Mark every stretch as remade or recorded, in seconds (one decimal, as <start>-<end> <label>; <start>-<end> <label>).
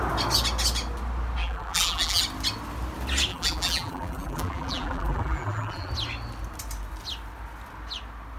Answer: 0.0-1.4 recorded; 1.4-2.2 remade; 2.2-3.3 recorded; 3.3-5.9 remade; 5.9-8.4 recorded